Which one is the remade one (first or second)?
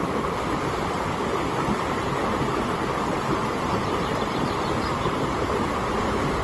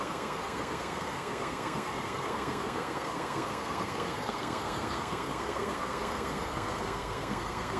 second